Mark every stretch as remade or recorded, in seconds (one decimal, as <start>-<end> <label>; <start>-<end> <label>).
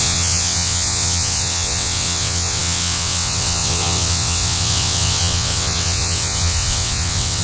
0.0-7.4 remade